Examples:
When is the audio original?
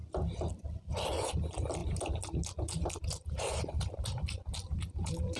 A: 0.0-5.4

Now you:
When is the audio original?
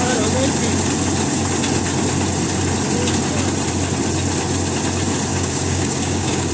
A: 0.0-5.3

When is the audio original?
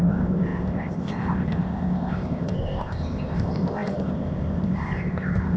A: none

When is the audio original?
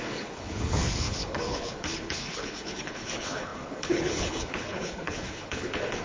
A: none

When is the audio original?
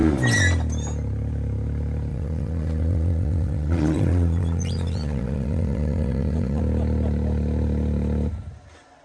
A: 0.0-2.1; 6.6-9.0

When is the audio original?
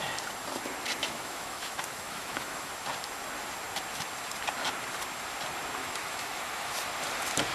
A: 0.0-1.0; 2.7-5.8; 6.7-7.5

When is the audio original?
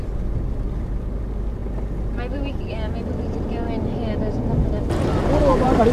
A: 0.0-5.9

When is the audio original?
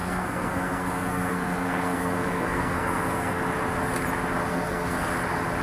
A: 3.4-4.5; 5.1-5.6